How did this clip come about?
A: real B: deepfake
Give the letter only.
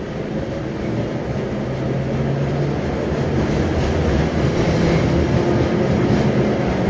A